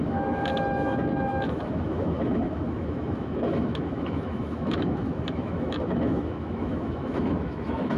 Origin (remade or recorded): remade